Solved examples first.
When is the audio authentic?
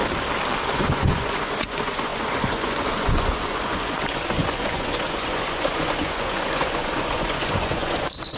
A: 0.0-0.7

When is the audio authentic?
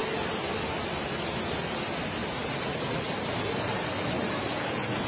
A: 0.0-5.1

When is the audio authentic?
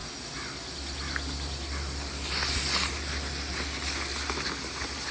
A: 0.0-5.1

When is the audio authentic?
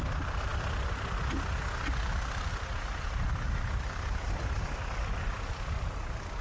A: 0.0-6.4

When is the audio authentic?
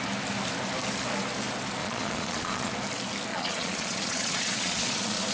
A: 0.0-1.8; 2.7-3.3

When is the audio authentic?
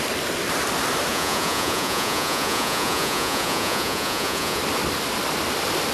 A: 0.0-1.1; 4.6-5.9